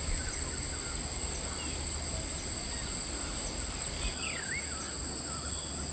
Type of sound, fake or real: real